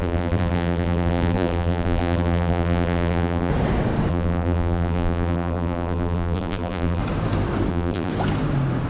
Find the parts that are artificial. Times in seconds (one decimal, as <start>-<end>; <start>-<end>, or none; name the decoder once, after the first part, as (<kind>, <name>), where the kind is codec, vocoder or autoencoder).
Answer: 0.0-3.5 (vocoder, BigVGAN v2); 4.1-7.0; 7.7-8.1